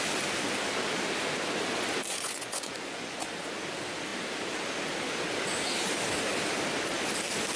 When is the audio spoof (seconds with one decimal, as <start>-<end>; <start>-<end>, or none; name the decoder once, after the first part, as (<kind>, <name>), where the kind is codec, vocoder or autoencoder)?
2.1-3.3 (vocoder, Vocos)